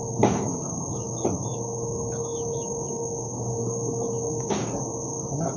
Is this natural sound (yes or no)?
no